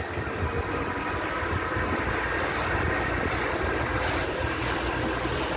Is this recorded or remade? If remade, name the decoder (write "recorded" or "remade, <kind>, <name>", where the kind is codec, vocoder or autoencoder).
recorded